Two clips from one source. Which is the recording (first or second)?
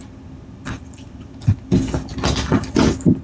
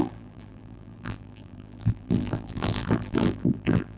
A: first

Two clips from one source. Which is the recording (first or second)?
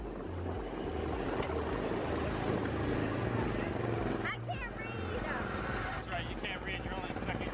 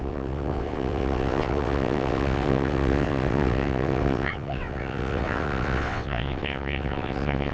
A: first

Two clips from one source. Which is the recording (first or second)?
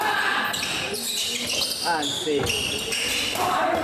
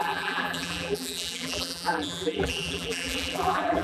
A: first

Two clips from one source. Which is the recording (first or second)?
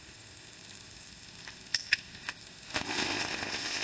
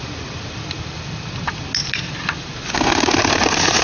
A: second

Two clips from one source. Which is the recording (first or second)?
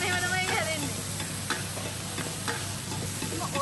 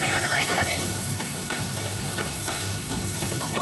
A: first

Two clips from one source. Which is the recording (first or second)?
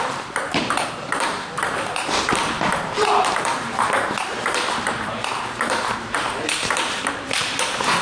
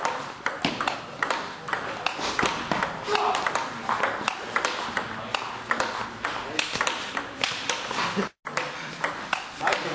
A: second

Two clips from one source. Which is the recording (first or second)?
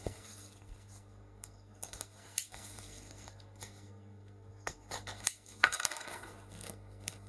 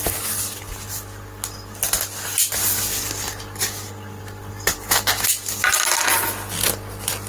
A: second